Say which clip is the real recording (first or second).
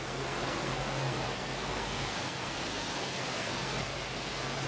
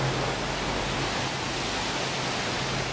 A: second